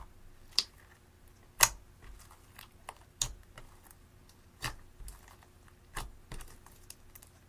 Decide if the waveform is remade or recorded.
recorded